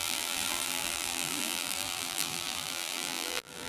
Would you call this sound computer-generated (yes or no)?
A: yes